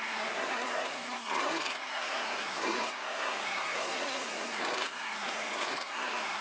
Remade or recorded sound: remade